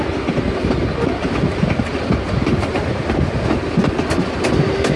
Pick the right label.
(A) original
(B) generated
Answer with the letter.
A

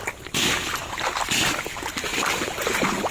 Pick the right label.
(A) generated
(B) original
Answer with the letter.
B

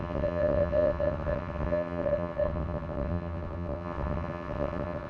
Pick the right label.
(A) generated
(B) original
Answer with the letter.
A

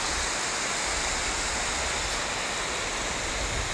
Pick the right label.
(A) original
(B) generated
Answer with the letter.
A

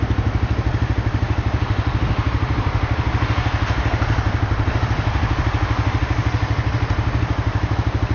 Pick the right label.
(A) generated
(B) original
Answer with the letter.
B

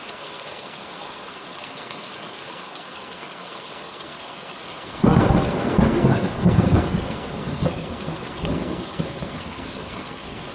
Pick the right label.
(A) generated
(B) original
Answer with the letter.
A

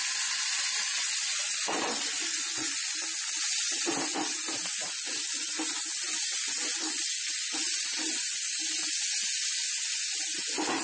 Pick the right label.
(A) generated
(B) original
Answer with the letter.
B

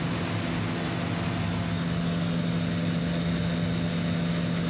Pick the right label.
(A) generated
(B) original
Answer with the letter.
B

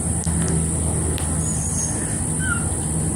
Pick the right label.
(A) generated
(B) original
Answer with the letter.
B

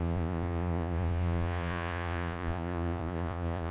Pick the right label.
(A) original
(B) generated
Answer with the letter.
B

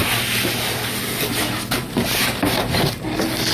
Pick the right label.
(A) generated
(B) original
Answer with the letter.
B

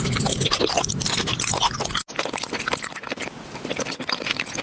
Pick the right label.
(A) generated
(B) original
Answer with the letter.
B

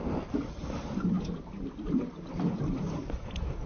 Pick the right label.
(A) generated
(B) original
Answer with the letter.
B